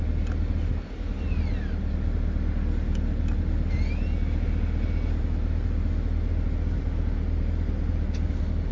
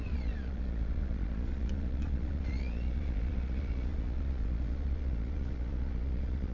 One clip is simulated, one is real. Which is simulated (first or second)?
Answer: second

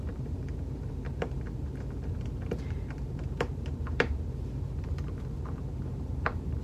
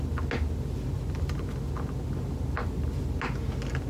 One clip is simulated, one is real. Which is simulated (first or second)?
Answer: first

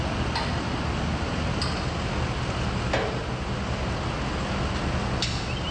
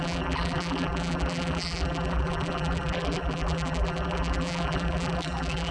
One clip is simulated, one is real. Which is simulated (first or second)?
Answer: second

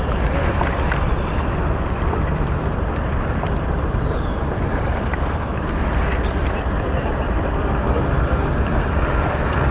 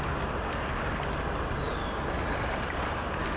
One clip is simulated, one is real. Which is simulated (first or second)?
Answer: first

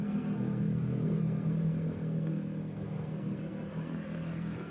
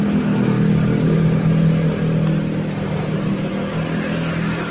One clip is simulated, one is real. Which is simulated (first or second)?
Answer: first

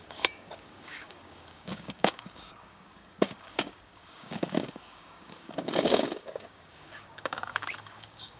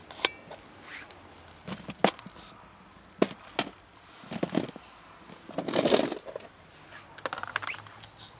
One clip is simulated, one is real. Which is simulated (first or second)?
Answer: first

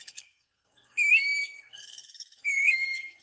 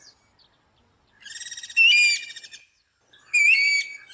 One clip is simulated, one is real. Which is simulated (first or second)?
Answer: first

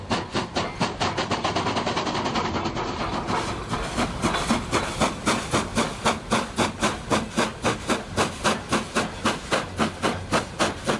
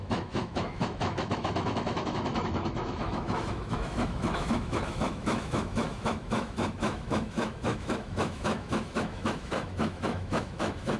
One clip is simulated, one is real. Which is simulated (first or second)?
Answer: second